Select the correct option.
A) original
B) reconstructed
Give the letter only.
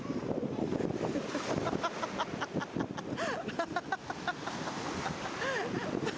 A